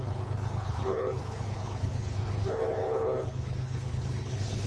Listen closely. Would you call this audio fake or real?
fake